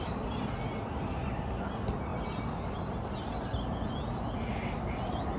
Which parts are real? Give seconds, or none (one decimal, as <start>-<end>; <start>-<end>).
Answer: 0.0-5.4